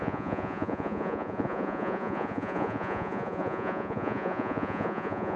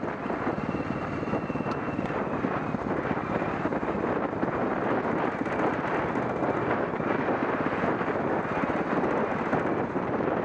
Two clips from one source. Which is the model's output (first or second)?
first